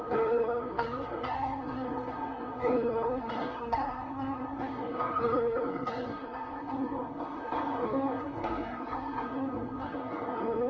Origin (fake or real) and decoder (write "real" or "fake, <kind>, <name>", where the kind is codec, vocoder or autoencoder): fake, codec, SNAC